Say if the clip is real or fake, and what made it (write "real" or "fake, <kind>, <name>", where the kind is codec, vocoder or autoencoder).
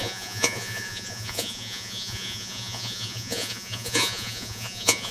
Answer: fake, vocoder, Vocos